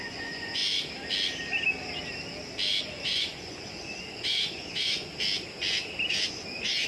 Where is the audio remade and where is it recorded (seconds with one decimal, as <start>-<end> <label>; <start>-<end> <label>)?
0.0-0.6 remade; 0.6-2.8 recorded; 2.8-5.1 remade; 5.1-6.3 recorded; 6.3-6.9 remade